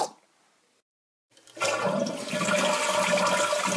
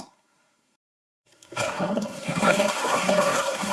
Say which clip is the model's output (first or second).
second